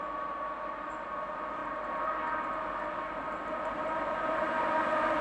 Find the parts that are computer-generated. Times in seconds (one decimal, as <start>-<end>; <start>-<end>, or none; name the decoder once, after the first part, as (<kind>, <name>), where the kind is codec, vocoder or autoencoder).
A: 1.6-4.7 (vocoder, BigVGAN v2)